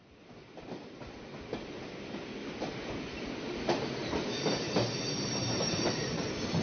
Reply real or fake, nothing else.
real